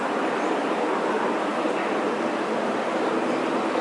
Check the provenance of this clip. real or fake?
real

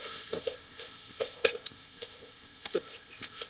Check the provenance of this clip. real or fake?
fake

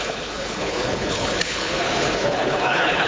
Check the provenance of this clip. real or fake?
fake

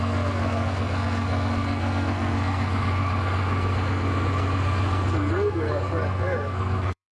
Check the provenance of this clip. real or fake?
fake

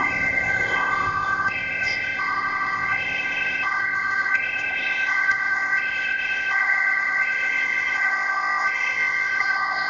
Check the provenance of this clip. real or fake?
fake